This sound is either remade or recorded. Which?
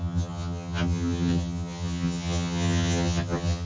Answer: remade